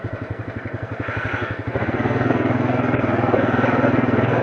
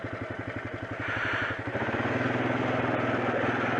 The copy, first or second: first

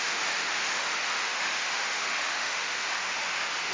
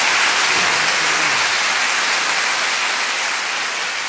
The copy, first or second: first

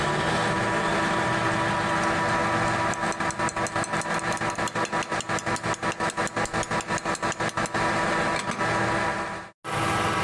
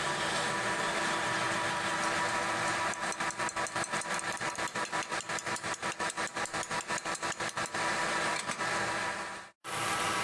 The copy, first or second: second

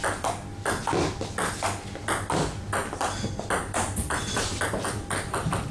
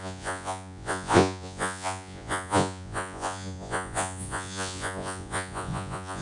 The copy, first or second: second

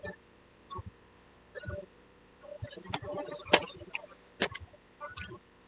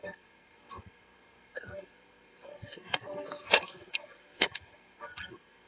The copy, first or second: second